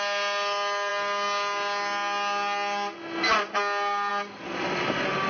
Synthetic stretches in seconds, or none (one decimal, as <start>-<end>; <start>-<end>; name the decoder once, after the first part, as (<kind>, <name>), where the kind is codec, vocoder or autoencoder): none